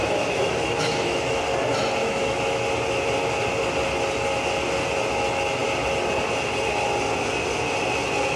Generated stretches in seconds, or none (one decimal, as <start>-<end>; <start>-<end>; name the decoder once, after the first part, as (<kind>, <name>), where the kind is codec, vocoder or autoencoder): 0.0-1.4 (autoencoder, DAC-VAE); 2.0-2.6